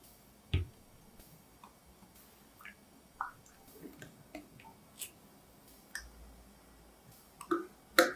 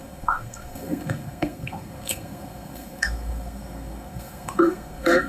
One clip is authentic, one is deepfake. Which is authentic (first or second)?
first